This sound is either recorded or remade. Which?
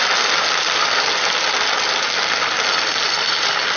recorded